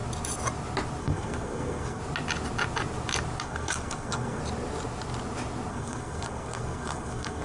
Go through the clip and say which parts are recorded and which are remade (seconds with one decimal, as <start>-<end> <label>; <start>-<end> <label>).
0.0-1.0 recorded; 1.0-2.0 remade; 2.0-3.4 recorded; 3.4-4.4 remade; 4.4-5.7 recorded; 5.7-7.4 remade